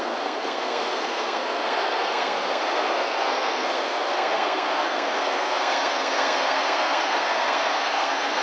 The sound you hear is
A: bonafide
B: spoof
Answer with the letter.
B